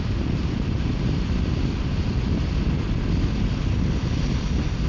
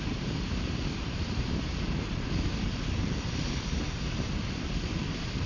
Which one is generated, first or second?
second